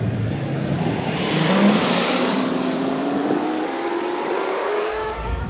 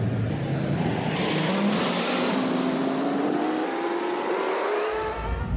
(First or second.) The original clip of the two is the second